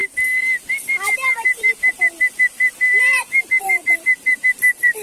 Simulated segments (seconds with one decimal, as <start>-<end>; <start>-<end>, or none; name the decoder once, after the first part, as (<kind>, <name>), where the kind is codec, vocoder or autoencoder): 3.0-5.0 (vocoder, BigVGAN v2)